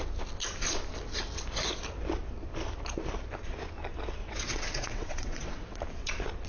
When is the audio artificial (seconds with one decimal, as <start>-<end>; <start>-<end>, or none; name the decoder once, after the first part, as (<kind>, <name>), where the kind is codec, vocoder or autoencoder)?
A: 4.2-5.8 (vocoder, WaveNeXt)